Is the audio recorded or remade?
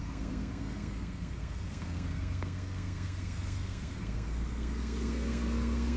remade